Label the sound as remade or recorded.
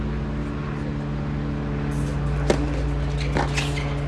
recorded